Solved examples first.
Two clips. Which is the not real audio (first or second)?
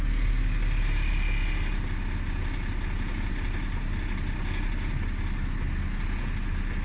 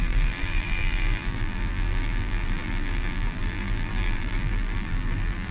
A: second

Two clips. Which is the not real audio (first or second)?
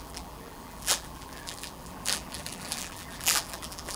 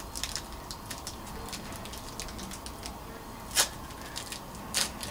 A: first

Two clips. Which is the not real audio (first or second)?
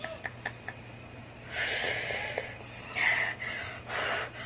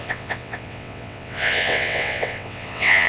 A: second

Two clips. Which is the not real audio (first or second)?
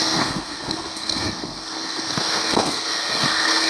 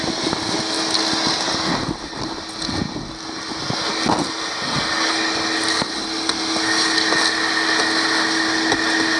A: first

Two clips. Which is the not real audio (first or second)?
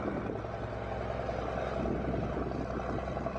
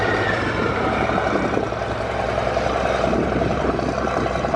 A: second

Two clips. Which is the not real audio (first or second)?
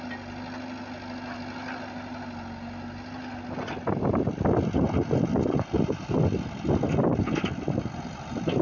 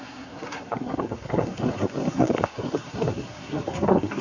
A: second